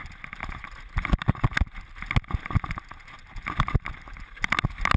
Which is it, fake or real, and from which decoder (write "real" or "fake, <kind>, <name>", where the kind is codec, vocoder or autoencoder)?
real